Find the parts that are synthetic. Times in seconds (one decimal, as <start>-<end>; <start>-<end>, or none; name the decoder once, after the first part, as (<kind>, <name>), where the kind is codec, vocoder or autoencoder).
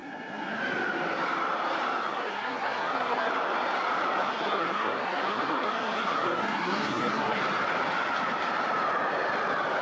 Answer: 0.0-0.6 (codec, SNAC); 2.1-3.3; 4.2-7.4